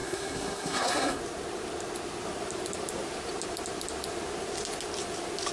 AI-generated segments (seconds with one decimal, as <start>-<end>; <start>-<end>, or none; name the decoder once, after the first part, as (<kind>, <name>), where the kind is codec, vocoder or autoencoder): 0.0-1.2 (codec, SNAC)